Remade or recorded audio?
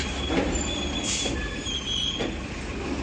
recorded